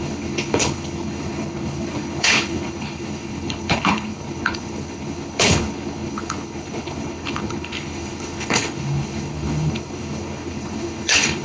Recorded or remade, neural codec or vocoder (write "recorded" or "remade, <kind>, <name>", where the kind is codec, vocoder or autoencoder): remade, codec, HILCodec